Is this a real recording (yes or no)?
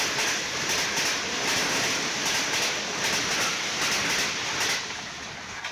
yes